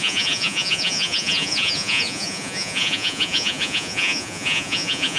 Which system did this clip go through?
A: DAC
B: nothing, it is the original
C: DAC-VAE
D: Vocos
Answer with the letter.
D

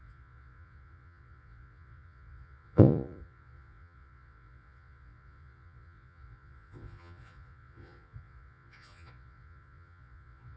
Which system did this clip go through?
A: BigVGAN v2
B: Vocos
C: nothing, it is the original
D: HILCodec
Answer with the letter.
B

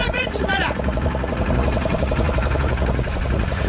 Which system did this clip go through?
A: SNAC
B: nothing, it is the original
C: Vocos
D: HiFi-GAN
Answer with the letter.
C